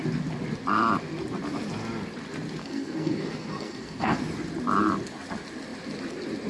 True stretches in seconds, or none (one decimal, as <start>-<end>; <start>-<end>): 0.0-2.6; 4.2-6.5